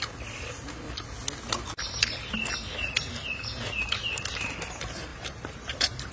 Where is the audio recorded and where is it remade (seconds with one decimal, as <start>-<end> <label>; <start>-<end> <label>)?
0.0-5.1 recorded; 5.1-6.1 remade